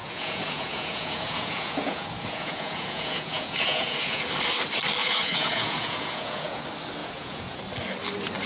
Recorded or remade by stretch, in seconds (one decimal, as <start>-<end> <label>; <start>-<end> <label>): 0.0-4.2 remade; 4.2-5.0 recorded; 5.0-6.6 remade; 6.6-7.0 recorded; 7.0-7.6 remade; 7.6-8.5 recorded